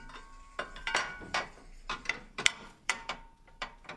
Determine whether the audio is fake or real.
fake